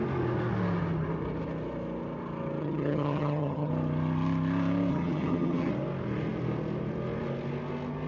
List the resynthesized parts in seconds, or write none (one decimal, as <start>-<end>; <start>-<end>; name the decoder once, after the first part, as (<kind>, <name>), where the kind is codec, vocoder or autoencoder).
2.6-3.7 (vocoder, HiFi-GAN); 4.9-5.7